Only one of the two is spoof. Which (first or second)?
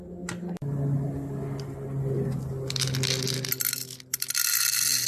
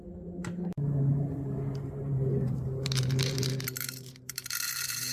second